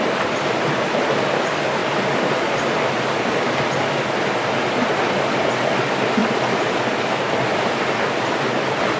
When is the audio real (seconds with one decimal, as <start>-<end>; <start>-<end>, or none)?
0.0-9.0